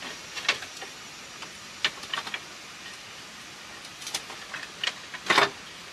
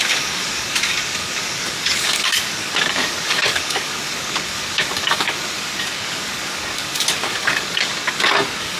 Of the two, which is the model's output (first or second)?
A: second